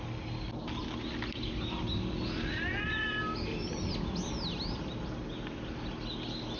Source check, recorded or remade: recorded